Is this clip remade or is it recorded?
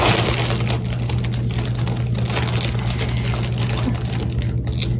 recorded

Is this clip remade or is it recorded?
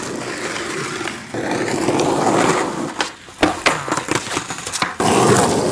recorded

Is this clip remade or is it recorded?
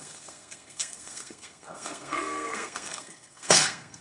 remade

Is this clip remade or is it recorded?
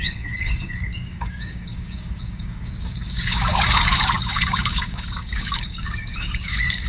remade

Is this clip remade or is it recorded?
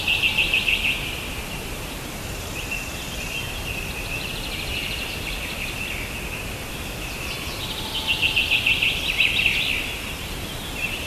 recorded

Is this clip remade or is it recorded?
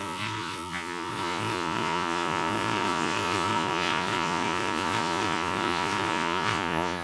remade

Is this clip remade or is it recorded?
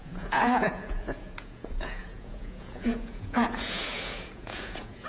remade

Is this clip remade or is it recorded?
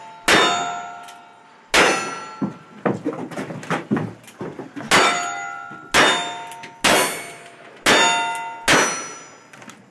recorded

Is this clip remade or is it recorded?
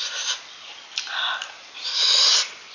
recorded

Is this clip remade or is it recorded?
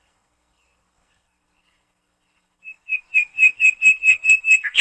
remade